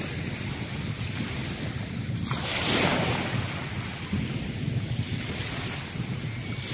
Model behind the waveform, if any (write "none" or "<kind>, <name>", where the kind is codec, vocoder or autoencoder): none